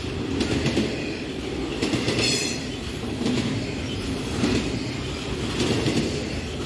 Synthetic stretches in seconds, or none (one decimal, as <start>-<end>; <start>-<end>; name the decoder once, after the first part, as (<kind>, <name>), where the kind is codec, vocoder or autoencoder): 2.4-4.9 (vocoder, BigVGAN v2)